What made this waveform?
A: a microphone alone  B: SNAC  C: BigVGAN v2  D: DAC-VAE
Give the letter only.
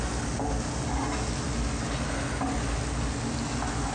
A